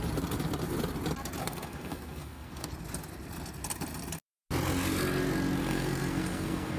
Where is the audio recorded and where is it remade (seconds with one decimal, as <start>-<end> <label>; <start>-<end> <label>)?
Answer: 0.0-1.4 recorded; 1.4-2.7 remade; 2.7-5.6 recorded; 5.6-6.8 remade